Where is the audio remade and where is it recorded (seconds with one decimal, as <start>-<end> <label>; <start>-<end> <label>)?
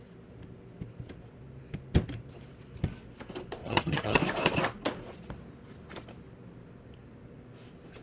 0.0-3.6 recorded; 3.6-4.2 remade; 4.2-8.0 recorded